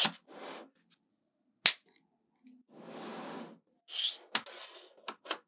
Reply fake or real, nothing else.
real